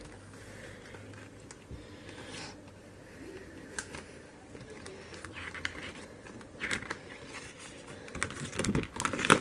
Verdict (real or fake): real